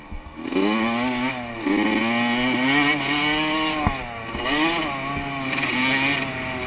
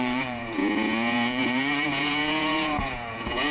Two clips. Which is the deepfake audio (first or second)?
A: second